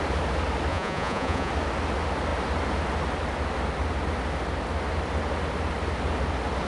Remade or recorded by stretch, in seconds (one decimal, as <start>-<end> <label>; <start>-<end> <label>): 0.0-0.7 recorded; 0.7-1.5 remade; 1.5-6.7 recorded